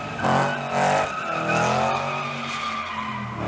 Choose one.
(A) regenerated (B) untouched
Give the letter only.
B